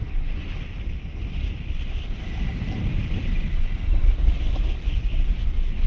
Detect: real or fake real